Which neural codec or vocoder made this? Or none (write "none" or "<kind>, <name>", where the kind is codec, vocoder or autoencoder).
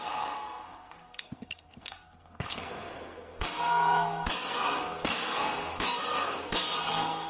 codec, SNAC